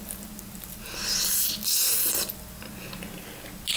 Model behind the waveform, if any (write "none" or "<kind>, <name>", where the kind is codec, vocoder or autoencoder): none